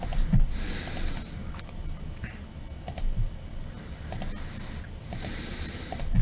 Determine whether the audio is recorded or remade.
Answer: recorded